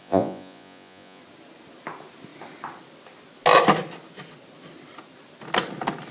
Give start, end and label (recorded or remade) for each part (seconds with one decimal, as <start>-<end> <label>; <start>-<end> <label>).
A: 0.0-1.2 remade; 1.2-6.1 recorded